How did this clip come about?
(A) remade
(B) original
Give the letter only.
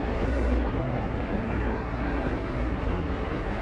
A